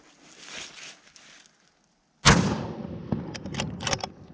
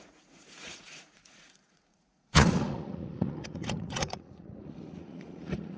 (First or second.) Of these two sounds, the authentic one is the first